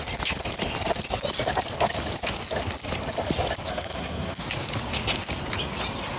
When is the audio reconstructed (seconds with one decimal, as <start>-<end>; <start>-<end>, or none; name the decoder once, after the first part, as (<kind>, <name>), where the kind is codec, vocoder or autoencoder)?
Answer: 3.7-4.4 (codec, SNAC)